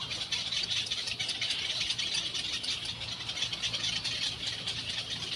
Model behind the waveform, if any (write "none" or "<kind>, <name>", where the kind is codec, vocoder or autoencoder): none